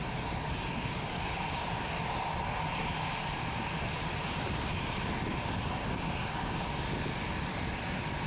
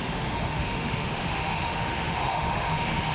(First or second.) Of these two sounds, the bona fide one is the first